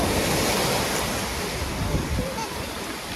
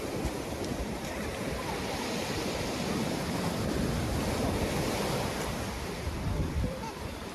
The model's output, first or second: second